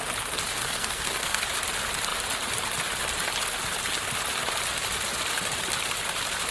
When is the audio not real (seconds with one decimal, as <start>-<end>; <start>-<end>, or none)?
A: 0.6-1.4